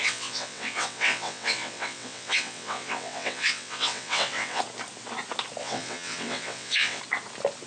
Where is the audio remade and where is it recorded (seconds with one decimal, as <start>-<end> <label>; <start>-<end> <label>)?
0.0-4.6 remade; 4.6-5.6 recorded; 5.6-7.0 remade; 7.0-7.7 recorded